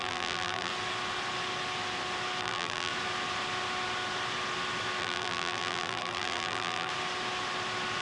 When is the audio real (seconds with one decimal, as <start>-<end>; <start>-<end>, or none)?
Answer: 0.7-2.4; 2.9-5.0; 6.9-8.0